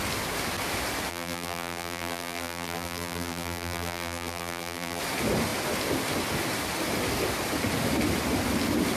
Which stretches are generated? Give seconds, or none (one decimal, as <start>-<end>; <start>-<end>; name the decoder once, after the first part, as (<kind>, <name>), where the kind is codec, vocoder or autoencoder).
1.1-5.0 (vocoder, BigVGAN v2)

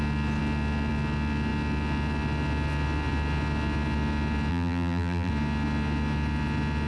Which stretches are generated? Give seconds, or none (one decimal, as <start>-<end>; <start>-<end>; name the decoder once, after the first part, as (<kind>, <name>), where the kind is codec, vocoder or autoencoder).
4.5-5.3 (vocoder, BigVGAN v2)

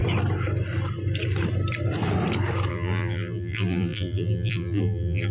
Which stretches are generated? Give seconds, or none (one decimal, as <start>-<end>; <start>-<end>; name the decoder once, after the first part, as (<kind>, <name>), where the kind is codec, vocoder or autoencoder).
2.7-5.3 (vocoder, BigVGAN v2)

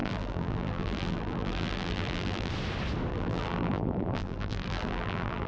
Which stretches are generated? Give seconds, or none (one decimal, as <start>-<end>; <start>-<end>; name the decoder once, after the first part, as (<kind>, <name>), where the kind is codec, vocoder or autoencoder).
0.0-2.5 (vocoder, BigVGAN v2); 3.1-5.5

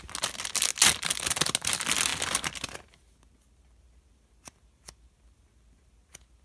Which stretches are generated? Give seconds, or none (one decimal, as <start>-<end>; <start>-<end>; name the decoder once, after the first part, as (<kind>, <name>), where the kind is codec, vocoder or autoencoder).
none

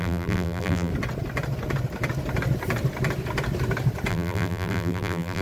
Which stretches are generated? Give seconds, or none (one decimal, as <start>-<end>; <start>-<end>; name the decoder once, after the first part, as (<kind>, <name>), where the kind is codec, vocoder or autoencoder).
0.0-0.9 (vocoder, BigVGAN v2); 4.1-5.4

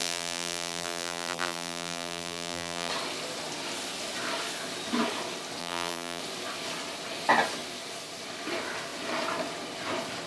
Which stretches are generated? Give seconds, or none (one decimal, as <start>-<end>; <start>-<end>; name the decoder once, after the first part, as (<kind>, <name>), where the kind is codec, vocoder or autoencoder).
0.0-2.9 (vocoder, BigVGAN v2); 5.6-6.2